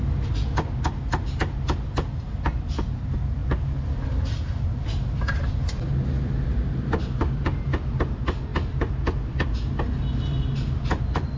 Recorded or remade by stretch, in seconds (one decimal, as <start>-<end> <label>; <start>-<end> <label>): 0.0-11.4 recorded